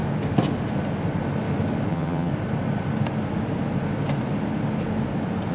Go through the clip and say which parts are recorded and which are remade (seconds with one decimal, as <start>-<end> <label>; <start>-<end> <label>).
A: 0.0-1.9 recorded; 1.9-2.3 remade; 2.3-5.5 recorded